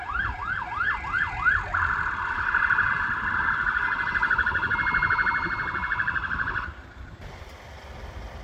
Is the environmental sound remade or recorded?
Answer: remade